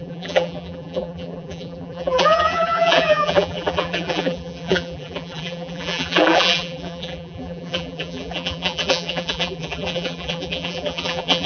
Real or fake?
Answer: fake